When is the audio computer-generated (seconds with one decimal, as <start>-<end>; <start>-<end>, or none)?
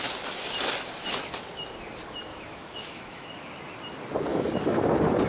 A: 2.3-3.3; 4.3-4.8